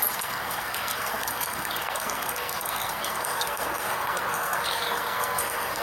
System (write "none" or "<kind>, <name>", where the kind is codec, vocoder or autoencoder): codec, SNAC